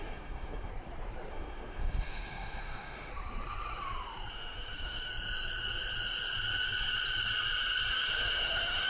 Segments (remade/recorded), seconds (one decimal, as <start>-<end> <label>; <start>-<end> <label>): 0.0-0.7 remade; 0.7-1.3 recorded; 1.3-3.1 remade; 3.1-4.3 recorded; 4.3-5.1 remade; 5.1-7.9 recorded; 7.9-8.9 remade